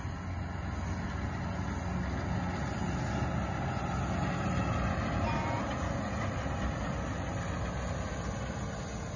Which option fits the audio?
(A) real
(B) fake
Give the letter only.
A